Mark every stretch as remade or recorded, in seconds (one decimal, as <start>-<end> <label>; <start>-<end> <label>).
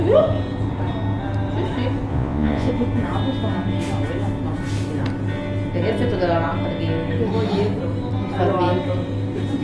0.0-2.1 recorded; 2.1-2.7 remade; 2.7-9.6 recorded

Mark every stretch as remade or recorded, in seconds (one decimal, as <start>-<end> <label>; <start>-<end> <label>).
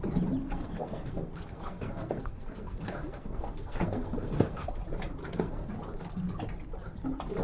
0.0-0.4 recorded; 0.4-4.8 remade; 4.8-5.2 recorded; 5.2-5.7 remade; 5.7-7.4 recorded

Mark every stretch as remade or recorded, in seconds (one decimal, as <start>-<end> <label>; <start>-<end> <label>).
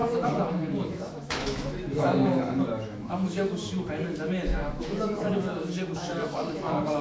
0.0-3.7 remade; 3.7-4.5 recorded; 4.5-7.0 remade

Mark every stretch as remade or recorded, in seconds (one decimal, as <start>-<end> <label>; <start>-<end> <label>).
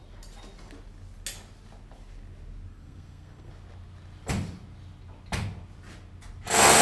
0.0-2.7 recorded; 2.7-3.5 remade; 3.5-6.8 recorded